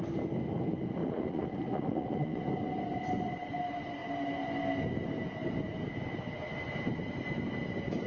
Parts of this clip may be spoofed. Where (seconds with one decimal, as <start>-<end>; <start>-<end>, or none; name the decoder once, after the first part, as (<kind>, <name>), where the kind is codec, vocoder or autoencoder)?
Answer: 1.0-2.5 (vocoder, Vocos)

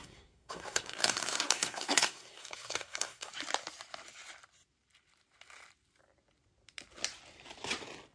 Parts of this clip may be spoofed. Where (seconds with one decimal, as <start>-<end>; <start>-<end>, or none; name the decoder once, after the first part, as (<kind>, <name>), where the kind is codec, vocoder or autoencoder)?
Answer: 0.0-3.3 (codec, SNAC)